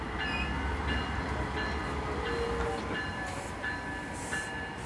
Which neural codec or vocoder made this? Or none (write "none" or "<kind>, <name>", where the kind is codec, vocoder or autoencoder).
none